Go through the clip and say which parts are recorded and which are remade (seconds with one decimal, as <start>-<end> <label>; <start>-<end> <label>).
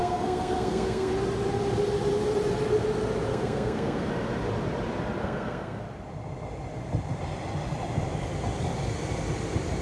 0.0-1.1 remade; 1.1-3.3 recorded; 3.3-4.1 remade; 4.1-5.2 recorded; 5.2-5.8 remade; 5.8-9.8 recorded